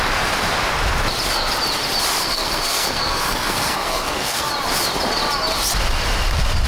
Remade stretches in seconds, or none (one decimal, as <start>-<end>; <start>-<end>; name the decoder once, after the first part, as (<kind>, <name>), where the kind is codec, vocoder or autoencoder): 2.2-4.5 (codec, SNAC)